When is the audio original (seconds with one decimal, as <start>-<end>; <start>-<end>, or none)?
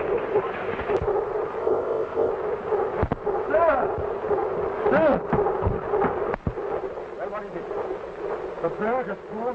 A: 0.0-1.6; 2.3-9.5